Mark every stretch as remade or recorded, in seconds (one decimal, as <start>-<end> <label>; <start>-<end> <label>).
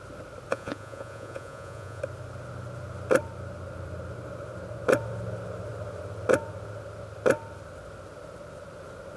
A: 0.0-0.5 recorded; 0.5-2.0 remade; 2.0-9.2 recorded